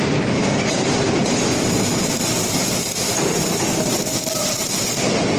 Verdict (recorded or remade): remade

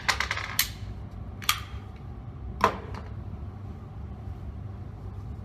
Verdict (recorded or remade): recorded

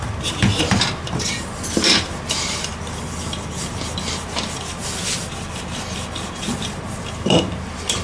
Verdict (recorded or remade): remade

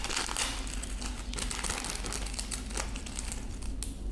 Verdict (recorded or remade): recorded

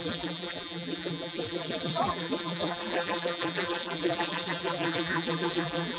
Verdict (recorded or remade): remade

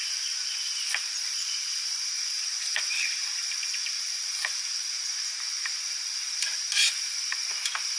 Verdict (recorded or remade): remade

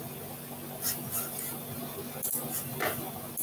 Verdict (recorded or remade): recorded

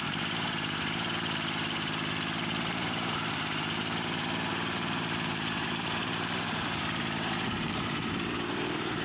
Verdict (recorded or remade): remade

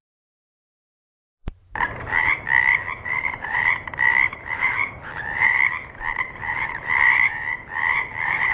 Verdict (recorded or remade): remade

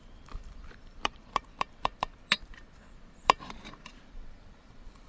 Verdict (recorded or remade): remade